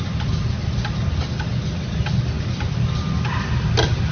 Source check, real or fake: real